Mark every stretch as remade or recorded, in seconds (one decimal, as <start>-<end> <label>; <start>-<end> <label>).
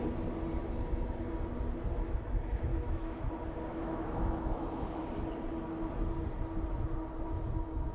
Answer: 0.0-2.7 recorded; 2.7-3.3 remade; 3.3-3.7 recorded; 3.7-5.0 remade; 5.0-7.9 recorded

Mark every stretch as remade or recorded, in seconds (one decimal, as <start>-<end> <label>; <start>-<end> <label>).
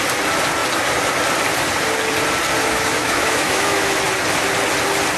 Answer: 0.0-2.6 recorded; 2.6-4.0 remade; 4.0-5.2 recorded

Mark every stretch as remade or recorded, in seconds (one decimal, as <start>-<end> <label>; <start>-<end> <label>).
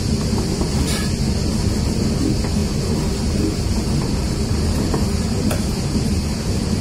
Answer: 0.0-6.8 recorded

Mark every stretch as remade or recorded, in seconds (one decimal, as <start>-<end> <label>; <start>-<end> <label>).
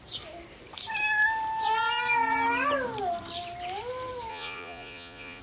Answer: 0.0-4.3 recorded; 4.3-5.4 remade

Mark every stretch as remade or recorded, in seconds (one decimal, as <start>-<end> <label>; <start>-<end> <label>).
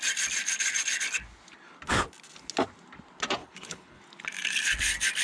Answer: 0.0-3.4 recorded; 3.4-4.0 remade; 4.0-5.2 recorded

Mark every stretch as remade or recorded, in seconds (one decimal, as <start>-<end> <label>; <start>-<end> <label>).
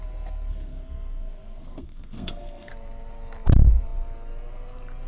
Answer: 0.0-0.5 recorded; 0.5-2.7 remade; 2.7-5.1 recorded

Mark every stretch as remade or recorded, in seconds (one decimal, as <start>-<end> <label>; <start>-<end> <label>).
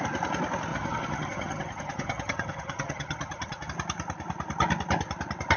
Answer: 0.0-0.7 recorded; 0.7-3.7 remade; 3.7-5.6 recorded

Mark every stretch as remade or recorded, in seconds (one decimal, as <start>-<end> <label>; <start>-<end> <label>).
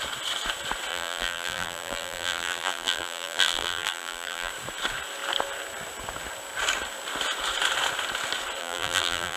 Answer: 0.0-0.9 recorded; 0.9-4.5 remade; 4.5-8.6 recorded; 8.6-9.4 remade